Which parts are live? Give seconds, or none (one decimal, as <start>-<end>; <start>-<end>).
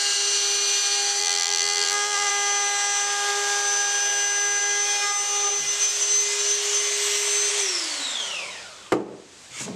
0.0-1.2; 2.3-9.8